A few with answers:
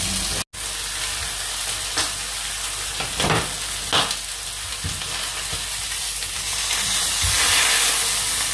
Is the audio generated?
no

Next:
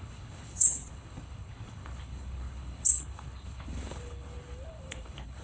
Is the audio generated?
yes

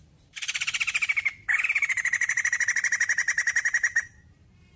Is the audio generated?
yes